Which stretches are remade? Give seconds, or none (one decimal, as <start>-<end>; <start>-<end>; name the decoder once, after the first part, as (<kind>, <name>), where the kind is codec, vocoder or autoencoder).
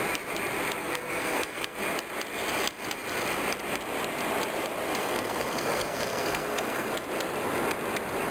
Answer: 0.8-1.8 (codec, SNAC); 5.0-6.9